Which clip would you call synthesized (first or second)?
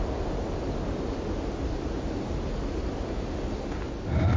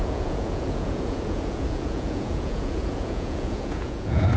second